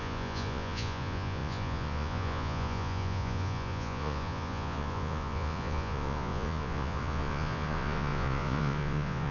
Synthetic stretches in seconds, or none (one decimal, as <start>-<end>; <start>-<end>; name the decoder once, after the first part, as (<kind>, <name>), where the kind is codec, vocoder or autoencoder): 0.0-9.3 (vocoder, Vocos)